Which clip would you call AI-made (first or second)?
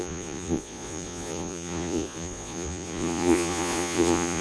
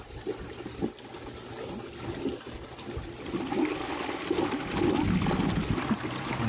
first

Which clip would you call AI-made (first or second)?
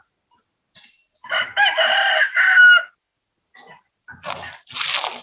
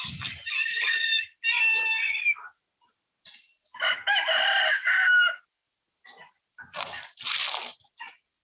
second